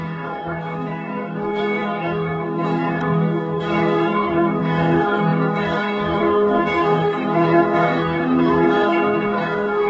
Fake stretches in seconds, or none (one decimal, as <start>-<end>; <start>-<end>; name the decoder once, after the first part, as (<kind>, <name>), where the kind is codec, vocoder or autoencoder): 0.0-9.9 (codec, DAC)